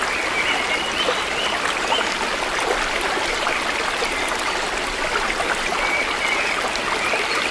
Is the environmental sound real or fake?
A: real